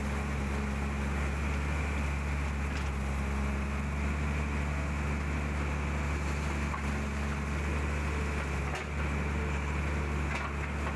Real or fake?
real